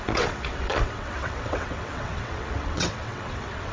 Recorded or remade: remade